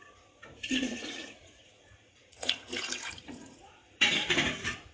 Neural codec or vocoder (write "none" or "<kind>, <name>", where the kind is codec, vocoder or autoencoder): vocoder, Vocos